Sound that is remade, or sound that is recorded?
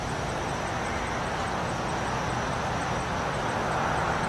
recorded